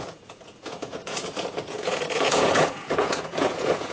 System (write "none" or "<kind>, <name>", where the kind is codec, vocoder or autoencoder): vocoder, Vocos